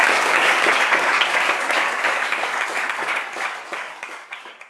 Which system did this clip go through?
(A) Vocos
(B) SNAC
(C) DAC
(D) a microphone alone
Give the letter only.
C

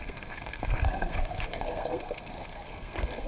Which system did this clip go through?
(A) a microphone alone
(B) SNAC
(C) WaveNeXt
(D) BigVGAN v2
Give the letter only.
B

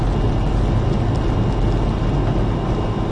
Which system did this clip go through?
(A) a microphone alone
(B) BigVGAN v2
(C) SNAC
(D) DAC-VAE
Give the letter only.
A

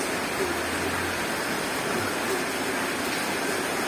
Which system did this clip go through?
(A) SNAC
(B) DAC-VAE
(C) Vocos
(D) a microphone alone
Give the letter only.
D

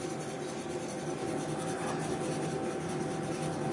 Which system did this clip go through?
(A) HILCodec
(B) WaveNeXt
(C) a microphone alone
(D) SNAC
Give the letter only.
C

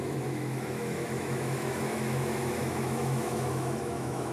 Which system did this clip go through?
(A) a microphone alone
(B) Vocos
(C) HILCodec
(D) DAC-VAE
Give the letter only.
D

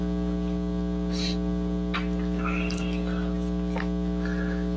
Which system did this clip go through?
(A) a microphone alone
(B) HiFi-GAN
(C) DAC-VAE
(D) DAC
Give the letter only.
A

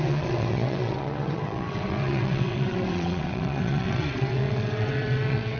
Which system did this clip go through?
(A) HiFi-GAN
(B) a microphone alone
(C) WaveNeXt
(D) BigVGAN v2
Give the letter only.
C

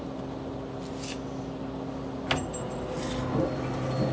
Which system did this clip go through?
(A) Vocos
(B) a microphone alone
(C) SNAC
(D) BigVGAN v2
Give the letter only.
B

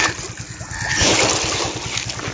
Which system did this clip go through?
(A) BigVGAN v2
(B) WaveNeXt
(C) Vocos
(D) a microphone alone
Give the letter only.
D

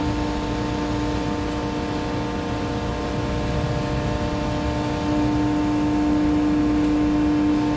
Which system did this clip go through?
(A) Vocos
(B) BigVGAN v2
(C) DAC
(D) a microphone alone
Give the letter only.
D